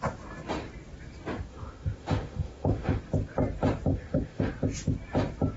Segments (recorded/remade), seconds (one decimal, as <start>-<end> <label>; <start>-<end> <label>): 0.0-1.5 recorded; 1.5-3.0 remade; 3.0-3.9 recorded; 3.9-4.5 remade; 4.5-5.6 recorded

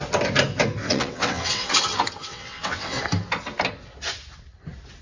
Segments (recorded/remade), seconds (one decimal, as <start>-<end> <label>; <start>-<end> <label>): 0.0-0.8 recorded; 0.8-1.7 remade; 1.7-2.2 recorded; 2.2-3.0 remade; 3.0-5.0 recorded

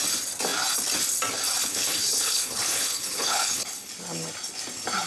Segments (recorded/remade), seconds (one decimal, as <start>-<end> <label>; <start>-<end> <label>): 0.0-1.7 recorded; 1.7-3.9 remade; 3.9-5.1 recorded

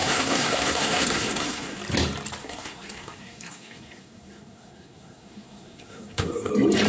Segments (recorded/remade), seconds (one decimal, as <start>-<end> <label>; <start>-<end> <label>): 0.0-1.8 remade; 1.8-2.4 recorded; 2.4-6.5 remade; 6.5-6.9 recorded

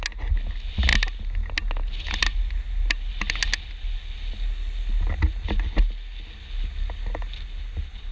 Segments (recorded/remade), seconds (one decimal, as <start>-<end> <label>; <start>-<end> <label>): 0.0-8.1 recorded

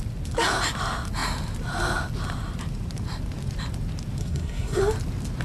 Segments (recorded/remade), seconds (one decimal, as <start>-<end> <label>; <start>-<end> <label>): 0.0-4.2 recorded; 4.2-4.8 remade; 4.8-5.4 recorded

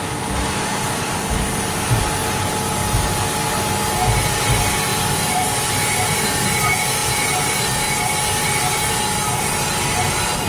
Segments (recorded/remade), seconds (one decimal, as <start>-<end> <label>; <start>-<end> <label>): 0.0-4.9 recorded; 4.9-5.6 remade; 5.6-10.5 recorded